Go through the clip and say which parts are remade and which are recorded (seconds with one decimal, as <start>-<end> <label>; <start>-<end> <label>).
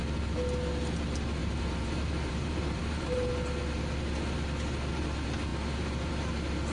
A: 0.0-1.4 recorded; 1.4-3.3 remade; 3.3-6.7 recorded